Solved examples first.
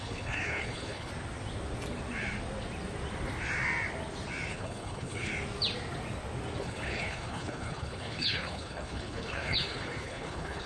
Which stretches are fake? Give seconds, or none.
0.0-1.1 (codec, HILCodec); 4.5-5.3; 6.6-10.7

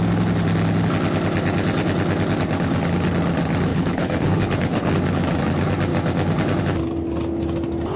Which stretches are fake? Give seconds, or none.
3.7-4.9 (codec, HILCodec)

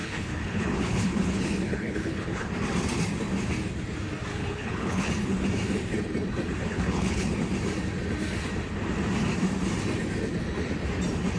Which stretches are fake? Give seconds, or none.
0.0-2.5 (codec, HILCodec); 4.3-5.1; 6.7-7.3

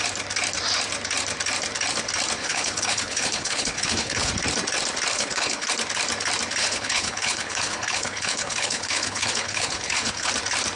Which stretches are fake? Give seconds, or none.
2.4-4.3 (codec, HILCodec); 5.1-5.7; 6.6-10.3

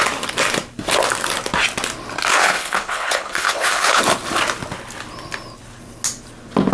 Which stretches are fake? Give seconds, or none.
2.3-4.0 (codec, HILCodec)

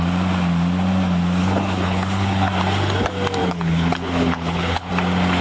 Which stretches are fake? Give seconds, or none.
1.4-2.5 (codec, HILCodec); 3.4-4.9

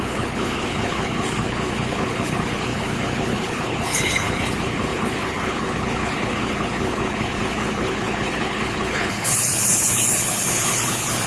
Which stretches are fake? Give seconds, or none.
0.0-11.3 (codec, HILCodec)